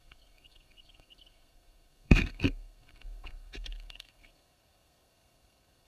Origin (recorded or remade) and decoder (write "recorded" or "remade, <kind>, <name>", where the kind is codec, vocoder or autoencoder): remade, codec, SNAC